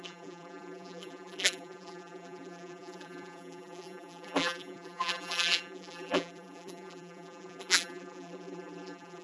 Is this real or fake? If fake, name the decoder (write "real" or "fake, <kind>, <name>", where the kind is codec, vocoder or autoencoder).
fake, vocoder, BigVGAN v2